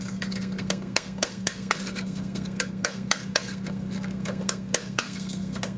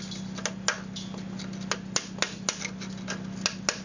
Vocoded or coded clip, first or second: first